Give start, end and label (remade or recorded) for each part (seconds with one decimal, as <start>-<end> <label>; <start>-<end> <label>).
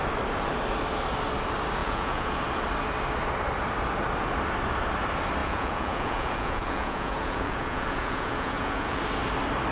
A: 0.0-1.8 recorded; 1.8-2.4 remade; 2.4-5.4 recorded; 5.4-9.0 remade; 9.0-9.7 recorded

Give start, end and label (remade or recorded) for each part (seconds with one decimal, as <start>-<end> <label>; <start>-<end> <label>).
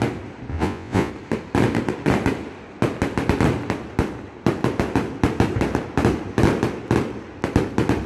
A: 0.0-0.5 recorded; 0.5-1.1 remade; 1.1-8.1 recorded